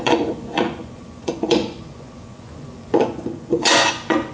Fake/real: fake